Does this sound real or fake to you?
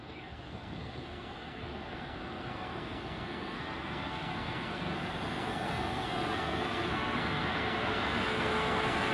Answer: fake